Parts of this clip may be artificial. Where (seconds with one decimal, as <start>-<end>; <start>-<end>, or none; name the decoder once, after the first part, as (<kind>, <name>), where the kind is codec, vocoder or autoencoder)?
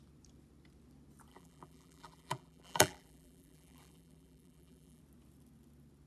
1.3-5.0 (vocoder, BigVGAN v2)